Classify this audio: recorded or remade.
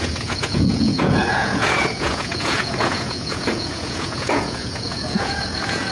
remade